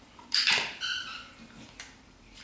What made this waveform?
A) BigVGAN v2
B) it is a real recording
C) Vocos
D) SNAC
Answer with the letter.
A